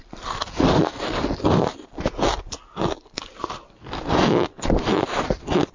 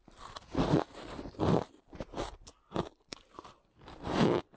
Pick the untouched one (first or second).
first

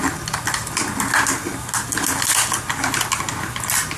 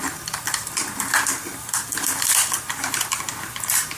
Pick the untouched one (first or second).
first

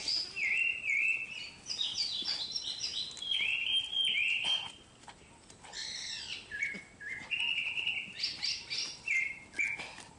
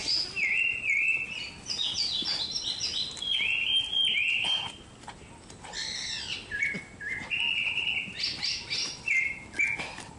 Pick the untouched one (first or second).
second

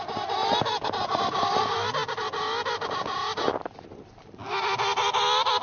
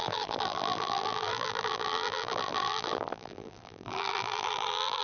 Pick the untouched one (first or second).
first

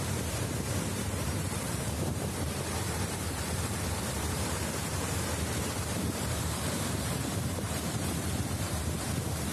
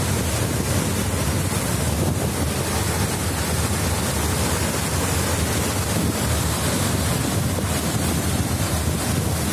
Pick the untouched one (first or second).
second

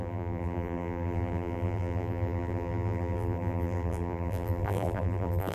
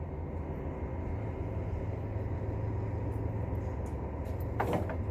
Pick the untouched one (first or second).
second